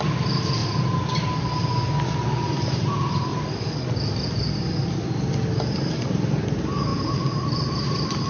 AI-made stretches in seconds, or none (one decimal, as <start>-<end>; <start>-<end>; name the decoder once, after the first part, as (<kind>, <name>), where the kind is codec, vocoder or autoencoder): 0.0-0.6 (vocoder, BigVGAN v2); 2.5-3.3; 5.7-8.3